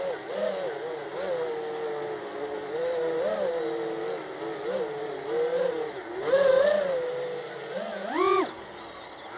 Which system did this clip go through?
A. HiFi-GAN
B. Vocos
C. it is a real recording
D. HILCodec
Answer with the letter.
C